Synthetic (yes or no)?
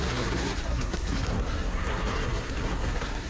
yes